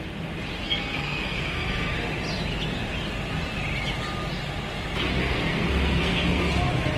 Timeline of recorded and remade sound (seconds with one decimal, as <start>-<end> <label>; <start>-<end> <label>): 0.0-0.6 recorded; 0.6-1.9 remade; 1.9-5.2 recorded; 5.2-6.4 remade; 6.4-7.0 recorded